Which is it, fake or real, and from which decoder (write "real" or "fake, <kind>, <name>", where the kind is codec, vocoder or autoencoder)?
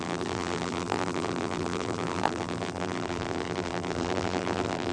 fake, vocoder, BigVGAN v2